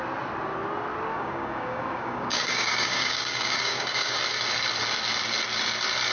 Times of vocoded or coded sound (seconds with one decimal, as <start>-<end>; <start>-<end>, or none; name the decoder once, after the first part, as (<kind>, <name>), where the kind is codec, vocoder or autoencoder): 1.1-4.2 (codec, DAC)